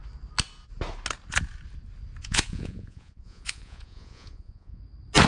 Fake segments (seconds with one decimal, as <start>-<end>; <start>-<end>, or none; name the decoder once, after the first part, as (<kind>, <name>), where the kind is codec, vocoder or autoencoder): 2.2-4.8 (vocoder, Vocos)